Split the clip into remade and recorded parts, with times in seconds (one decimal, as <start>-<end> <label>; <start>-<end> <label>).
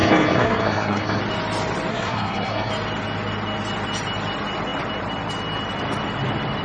0.0-1.2 remade; 1.2-1.9 recorded; 1.9-2.7 remade; 2.7-6.6 recorded